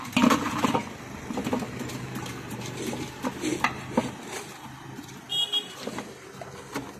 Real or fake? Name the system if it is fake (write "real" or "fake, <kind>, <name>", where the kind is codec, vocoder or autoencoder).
real